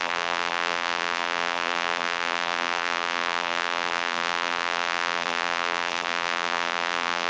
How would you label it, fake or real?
fake